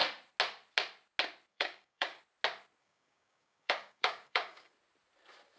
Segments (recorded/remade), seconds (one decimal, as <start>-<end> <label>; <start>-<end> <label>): 0.0-1.5 recorded; 1.5-2.2 remade; 2.2-2.8 recorded; 2.8-4.7 remade; 4.7-5.6 recorded